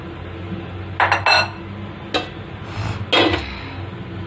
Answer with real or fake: real